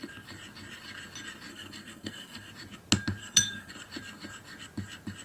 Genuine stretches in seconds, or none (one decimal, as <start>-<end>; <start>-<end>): 0.0-1.5; 2.5-3.2; 3.7-5.2